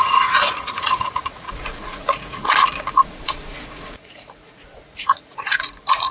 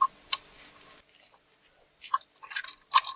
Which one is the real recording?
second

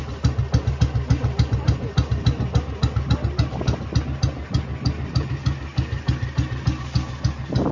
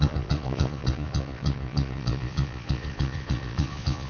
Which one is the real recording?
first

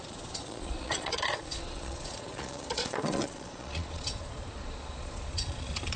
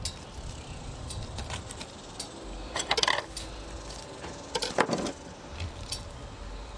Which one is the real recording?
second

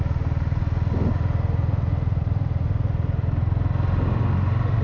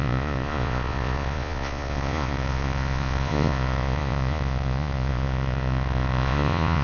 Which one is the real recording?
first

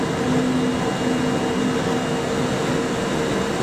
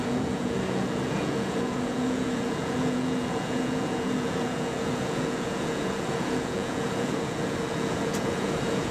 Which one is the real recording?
first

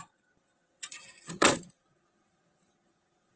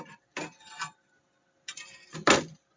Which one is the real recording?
second